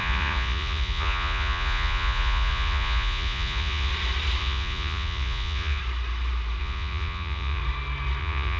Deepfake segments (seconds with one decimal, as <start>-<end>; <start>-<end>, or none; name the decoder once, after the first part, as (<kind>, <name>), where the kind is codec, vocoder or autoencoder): 0.0-3.9 (vocoder, Vocos); 4.4-5.8; 6.6-7.6; 8.2-8.6